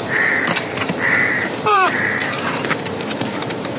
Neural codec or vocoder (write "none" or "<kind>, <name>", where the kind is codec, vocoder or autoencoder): vocoder, BigVGAN v2